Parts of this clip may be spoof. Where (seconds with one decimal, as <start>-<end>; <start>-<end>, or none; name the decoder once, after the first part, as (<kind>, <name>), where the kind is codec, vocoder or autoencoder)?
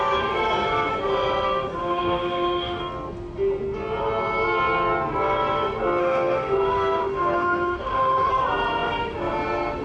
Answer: 1.8-2.8 (autoencoder, DAC-VAE); 6.0-8.3